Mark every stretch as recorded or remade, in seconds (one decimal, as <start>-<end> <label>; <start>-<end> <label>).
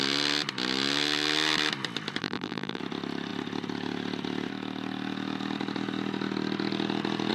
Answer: 0.0-2.2 recorded; 2.2-2.8 remade; 2.8-7.3 recorded